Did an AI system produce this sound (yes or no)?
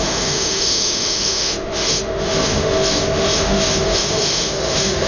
yes